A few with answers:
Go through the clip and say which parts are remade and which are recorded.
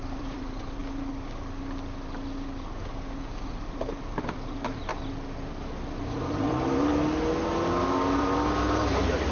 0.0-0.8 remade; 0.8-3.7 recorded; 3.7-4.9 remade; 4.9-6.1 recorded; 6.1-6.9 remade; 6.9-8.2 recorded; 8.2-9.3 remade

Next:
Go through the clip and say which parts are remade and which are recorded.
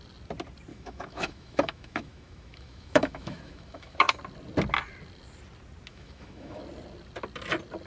0.0-0.7 recorded; 0.7-4.2 remade; 4.2-5.9 recorded; 5.9-6.6 remade; 6.6-7.9 recorded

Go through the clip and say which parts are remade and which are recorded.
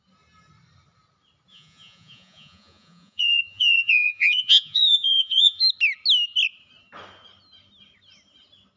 0.0-1.5 recorded; 1.5-5.6 remade; 5.6-8.8 recorded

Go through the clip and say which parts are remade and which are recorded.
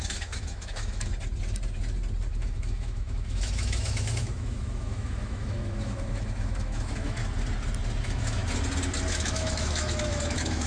0.0-1.1 remade; 1.1-2.3 recorded; 2.3-7.2 remade; 7.2-8.0 recorded; 8.0-8.4 remade; 8.4-9.1 recorded; 9.1-10.7 remade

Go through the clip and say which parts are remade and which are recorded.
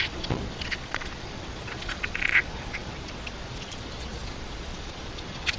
0.0-5.6 remade